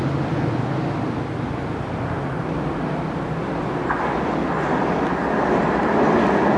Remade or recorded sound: recorded